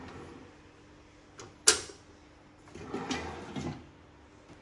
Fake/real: real